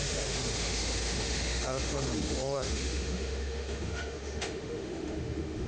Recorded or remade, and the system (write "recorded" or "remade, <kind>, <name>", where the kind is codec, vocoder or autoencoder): remade, autoencoder, DAC-VAE